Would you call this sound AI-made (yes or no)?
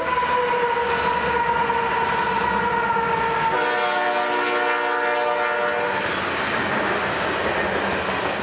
no